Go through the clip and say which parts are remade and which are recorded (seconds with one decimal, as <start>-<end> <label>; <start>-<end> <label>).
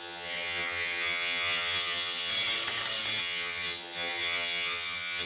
0.0-2.3 remade; 2.3-3.2 recorded; 3.2-5.3 remade